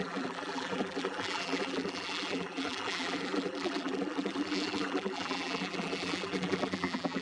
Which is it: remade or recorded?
remade